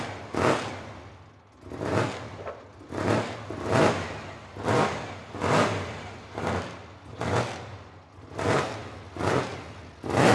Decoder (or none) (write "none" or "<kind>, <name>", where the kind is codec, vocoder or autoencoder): none